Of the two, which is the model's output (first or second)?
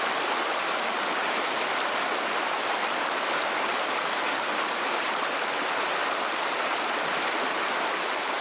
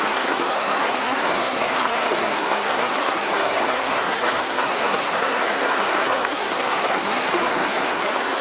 second